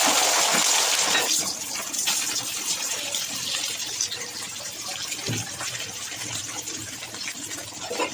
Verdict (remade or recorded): recorded